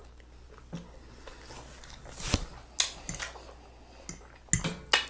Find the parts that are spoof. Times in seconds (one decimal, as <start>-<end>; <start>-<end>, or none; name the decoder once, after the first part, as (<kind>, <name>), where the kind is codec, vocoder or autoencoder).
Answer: none